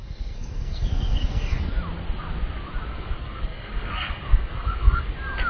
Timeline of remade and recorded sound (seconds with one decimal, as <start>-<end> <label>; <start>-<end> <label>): 0.0-1.7 remade; 1.7-2.9 recorded; 2.9-5.1 remade; 5.1-5.5 recorded